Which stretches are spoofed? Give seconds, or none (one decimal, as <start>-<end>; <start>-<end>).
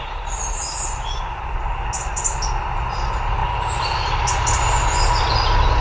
3.4-4.1